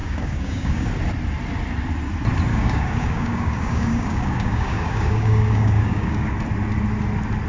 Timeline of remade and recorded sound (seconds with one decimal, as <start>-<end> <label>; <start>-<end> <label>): 0.0-0.9 remade; 0.9-2.5 recorded; 2.5-6.3 remade; 6.3-7.5 recorded